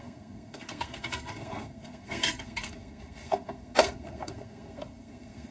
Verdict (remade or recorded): remade